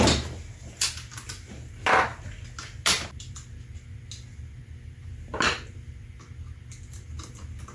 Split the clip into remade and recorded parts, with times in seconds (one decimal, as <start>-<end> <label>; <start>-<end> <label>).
0.0-7.7 recorded